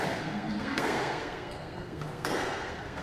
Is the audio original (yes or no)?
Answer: no